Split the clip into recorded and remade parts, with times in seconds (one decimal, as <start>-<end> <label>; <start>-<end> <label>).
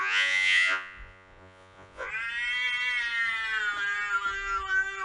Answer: 0.0-2.1 remade; 2.1-5.0 recorded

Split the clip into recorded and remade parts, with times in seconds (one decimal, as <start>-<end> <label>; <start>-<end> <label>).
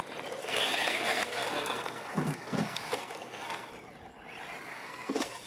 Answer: 0.0-0.4 recorded; 0.4-3.7 remade; 3.7-4.7 recorded; 4.7-5.5 remade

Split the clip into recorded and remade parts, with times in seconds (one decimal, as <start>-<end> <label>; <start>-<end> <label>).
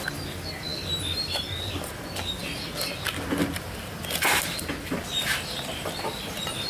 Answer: 0.0-6.7 recorded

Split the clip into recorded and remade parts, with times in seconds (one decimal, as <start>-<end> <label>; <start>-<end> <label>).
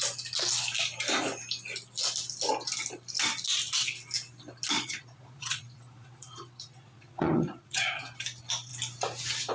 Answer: 0.0-4.7 recorded; 4.7-8.0 remade; 8.0-9.5 recorded